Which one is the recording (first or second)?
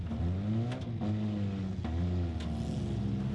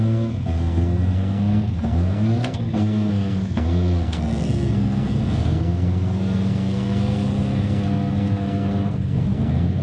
first